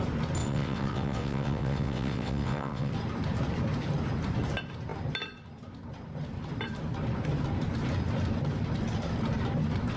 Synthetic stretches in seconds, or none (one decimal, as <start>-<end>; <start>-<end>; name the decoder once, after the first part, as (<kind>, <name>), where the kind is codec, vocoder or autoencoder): 0.4-2.9 (vocoder, WaveNeXt)